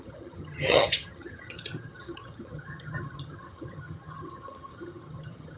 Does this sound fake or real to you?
fake